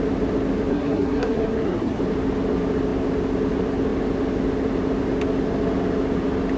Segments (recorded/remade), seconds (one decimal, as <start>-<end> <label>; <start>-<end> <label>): 0.0-0.7 recorded; 0.7-2.0 remade; 2.0-6.6 recorded